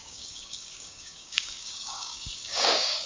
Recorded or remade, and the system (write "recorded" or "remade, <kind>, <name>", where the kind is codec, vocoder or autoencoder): remade, codec, DAC